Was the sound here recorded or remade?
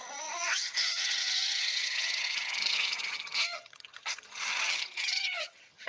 remade